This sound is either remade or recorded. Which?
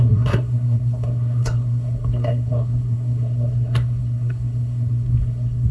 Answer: remade